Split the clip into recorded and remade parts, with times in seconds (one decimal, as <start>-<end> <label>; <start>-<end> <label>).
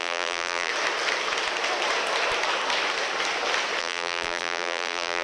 0.0-0.7 remade; 0.7-3.8 recorded; 3.8-5.2 remade